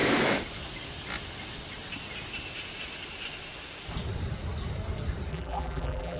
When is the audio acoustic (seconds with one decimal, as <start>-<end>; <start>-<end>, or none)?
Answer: 0.0-5.3